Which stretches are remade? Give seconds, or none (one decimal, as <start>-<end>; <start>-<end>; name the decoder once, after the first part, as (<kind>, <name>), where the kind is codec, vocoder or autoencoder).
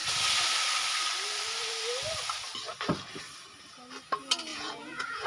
4.5-5.3 (vocoder, Vocos)